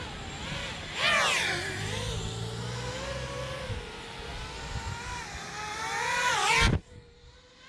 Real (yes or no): yes